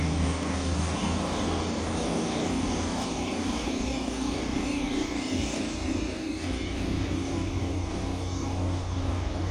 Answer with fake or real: fake